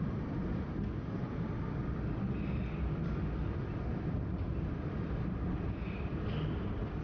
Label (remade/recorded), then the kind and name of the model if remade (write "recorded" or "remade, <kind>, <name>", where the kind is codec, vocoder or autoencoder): recorded